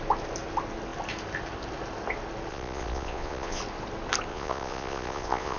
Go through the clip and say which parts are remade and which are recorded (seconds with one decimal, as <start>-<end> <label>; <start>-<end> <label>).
0.0-2.5 recorded; 2.5-3.6 remade; 3.6-4.3 recorded; 4.3-5.6 remade